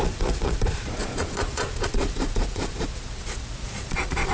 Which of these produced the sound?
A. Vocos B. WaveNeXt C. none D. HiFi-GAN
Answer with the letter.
A